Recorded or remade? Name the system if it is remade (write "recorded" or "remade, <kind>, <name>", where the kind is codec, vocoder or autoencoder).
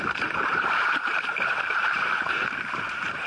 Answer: remade, vocoder, BigVGAN v2